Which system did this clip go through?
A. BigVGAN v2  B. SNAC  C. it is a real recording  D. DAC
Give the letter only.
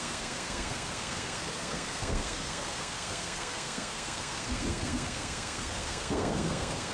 B